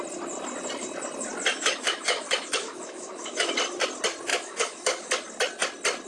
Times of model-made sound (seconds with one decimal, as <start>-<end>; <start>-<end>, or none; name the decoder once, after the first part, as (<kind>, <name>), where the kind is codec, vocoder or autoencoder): 1.5-3.5 (autoencoder, DAC-VAE); 4.3-5.1